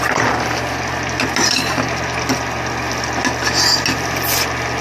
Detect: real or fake real